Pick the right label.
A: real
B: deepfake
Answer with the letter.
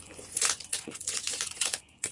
B